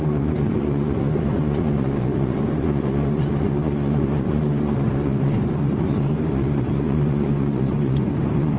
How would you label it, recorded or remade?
remade